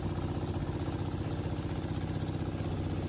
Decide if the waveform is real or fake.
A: real